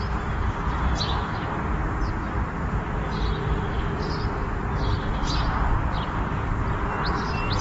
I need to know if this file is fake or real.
real